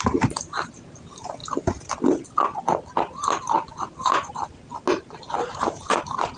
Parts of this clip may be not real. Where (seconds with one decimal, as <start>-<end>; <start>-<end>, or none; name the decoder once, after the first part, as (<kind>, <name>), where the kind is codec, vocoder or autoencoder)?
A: 0.0-1.4 (vocoder, BigVGAN v2); 3.7-6.4